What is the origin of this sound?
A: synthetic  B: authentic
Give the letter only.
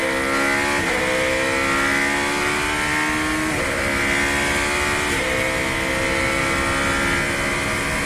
B